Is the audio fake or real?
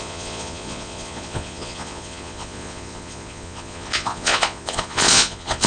fake